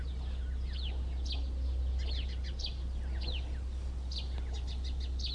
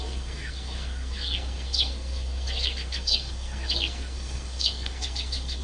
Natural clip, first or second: first